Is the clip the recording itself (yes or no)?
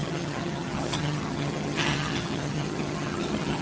no